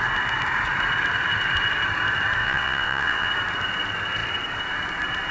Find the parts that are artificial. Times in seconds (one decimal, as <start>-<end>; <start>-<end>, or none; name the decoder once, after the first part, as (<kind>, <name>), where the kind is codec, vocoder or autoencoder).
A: 2.4-3.3 (vocoder, WaveNeXt)